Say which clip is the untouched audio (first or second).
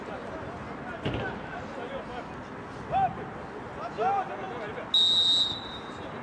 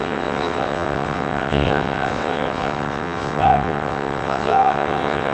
first